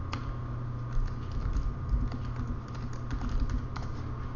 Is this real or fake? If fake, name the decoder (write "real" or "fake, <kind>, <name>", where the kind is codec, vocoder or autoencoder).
real